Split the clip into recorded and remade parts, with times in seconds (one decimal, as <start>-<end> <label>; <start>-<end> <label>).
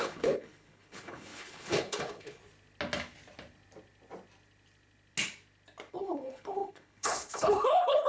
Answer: 0.0-2.4 remade; 2.4-5.9 recorded; 5.9-8.1 remade